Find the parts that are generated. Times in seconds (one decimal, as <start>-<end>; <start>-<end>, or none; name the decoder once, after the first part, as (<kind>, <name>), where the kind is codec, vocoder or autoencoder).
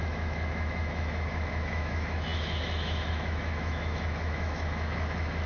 0.0-5.5 (autoencoder, DAC-VAE)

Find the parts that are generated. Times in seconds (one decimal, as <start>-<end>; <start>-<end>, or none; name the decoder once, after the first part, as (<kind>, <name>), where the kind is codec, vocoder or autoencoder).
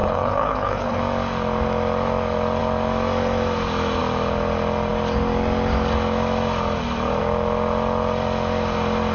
0.0-1.0 (codec, HILCodec)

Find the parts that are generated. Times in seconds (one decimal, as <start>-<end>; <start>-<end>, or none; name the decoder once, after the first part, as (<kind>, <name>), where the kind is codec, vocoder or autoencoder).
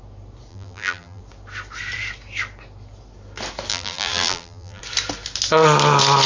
0.5-1.2 (vocoder, BigVGAN v2); 3.7-4.8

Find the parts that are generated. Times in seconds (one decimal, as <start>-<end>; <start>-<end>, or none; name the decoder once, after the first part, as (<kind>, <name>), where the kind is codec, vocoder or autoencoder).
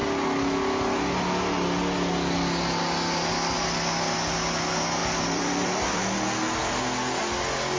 5.0-6.0 (vocoder, BigVGAN v2)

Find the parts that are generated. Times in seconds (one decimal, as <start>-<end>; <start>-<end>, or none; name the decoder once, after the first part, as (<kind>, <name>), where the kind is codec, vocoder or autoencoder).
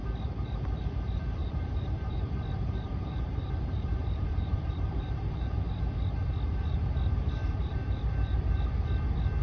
0.0-0.8 (vocoder, BigVGAN v2); 1.4-5.6; 7.4-8.6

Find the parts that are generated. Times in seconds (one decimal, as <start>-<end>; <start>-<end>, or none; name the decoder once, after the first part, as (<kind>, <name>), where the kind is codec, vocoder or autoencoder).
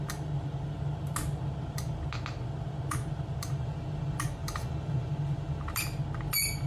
none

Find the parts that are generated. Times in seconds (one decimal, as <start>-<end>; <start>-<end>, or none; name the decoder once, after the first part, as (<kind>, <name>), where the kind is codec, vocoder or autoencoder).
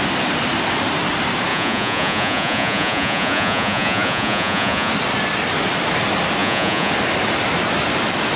1.5-4.9 (vocoder, Vocos); 6.4-6.9